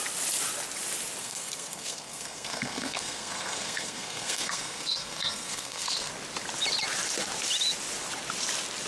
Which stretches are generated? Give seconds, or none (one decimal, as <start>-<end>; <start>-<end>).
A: 1.2-6.1